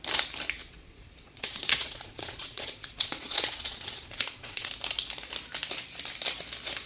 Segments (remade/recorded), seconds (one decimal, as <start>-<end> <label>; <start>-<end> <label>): 0.0-0.6 recorded; 0.6-4.7 remade; 4.7-6.9 recorded